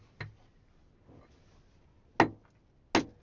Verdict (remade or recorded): recorded